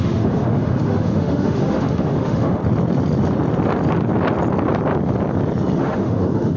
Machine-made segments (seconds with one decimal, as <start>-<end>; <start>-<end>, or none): 0.0-2.6; 5.8-6.6